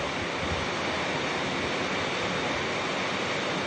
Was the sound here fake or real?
real